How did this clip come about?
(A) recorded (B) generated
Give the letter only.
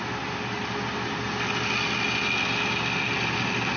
A